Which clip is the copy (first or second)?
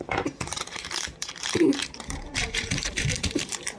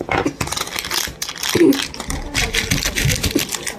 first